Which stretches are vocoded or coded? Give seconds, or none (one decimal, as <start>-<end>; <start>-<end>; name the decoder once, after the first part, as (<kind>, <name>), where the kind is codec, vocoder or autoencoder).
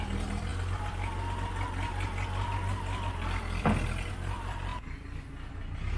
none